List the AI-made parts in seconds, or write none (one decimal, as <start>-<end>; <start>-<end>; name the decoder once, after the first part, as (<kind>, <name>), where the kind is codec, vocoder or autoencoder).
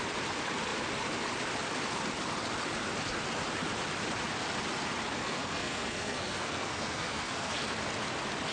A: 5.2-7.5 (codec, SNAC)